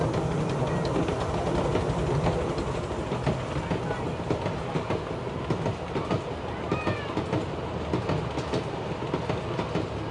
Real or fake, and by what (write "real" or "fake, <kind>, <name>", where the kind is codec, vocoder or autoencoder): real